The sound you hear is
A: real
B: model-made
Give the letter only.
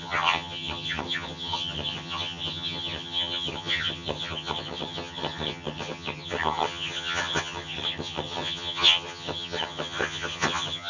B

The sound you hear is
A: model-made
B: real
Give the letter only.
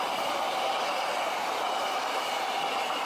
B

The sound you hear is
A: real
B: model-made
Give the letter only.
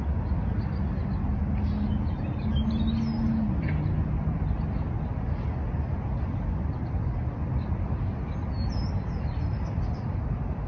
A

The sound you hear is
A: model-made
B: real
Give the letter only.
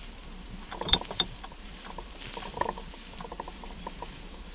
A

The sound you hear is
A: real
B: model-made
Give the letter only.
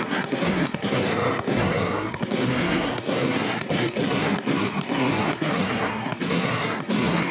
B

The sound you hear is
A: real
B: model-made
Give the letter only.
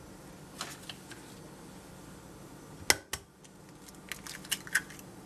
A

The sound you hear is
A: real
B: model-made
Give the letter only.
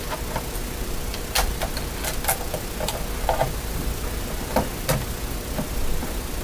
A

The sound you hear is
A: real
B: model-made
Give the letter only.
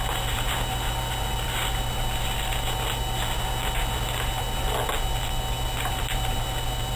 A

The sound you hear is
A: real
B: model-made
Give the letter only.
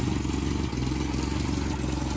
A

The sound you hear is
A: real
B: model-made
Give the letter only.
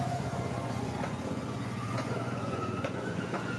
B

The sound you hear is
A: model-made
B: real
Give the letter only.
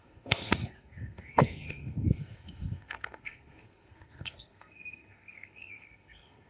A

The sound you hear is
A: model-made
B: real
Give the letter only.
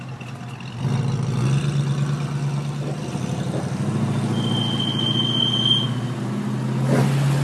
B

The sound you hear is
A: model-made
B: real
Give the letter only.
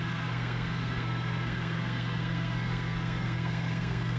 A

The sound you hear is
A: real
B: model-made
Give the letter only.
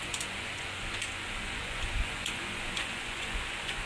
B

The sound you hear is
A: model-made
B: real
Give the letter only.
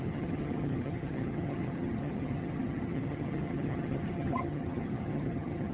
A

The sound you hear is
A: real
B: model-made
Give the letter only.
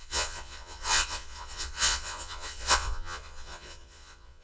B